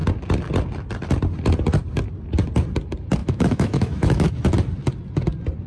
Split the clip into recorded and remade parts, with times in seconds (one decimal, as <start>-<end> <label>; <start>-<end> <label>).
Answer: 0.0-3.2 recorded; 3.2-4.3 remade; 4.3-5.7 recorded

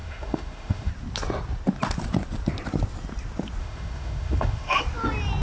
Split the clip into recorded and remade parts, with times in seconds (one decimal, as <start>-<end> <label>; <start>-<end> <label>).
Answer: 0.0-0.9 remade; 0.9-3.6 recorded; 3.6-4.8 remade; 4.8-5.4 recorded

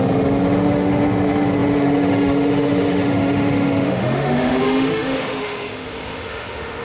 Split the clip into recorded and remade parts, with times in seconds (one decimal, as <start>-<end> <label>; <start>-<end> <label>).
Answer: 0.0-6.8 remade

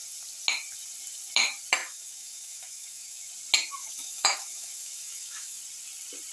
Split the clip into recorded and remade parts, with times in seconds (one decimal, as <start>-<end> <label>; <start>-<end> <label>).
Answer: 0.0-1.8 recorded; 1.8-3.3 remade; 3.3-3.8 recorded; 3.8-5.6 remade; 5.6-6.3 recorded

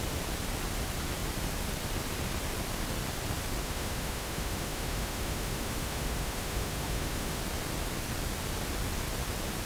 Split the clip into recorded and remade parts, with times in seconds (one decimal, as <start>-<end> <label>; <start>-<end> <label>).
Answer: 0.0-3.6 recorded; 3.6-7.4 remade; 7.4-9.7 recorded

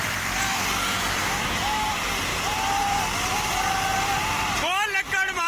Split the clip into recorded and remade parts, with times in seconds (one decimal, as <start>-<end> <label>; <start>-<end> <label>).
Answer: 0.0-1.2 recorded; 1.2-1.9 remade; 1.9-5.5 recorded